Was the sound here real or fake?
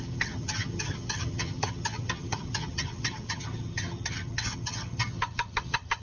fake